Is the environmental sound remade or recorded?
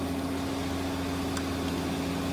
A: recorded